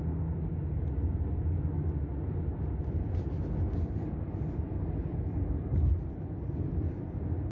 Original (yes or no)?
yes